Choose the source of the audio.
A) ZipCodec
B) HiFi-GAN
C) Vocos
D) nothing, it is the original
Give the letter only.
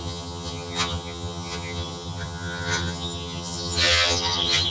B